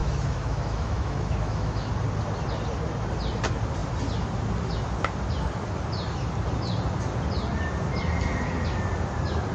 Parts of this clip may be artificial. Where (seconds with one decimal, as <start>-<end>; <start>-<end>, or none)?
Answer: 0.0-1.9